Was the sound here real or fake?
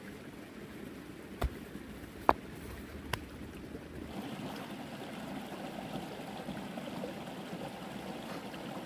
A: real